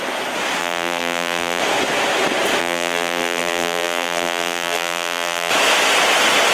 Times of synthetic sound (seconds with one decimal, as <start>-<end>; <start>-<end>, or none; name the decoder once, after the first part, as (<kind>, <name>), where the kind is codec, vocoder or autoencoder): 0.6-1.6 (vocoder, BigVGAN v2); 2.6-5.5